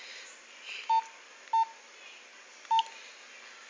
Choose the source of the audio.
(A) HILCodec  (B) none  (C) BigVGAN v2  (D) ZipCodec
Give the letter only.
B